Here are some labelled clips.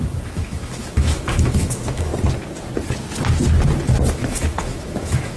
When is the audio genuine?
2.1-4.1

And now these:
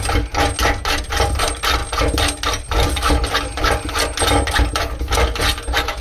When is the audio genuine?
0.0-6.0

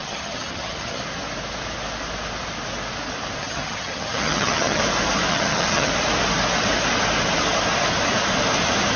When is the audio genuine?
1.0-3.4; 4.8-5.3; 5.9-9.0